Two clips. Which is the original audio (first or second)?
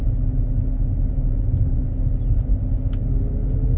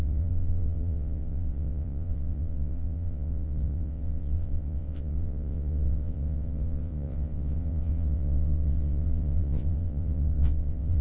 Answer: first